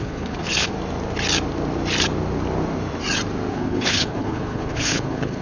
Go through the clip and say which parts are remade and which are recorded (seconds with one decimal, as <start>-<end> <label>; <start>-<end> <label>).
0.0-0.7 remade; 0.7-3.5 recorded; 3.5-5.4 remade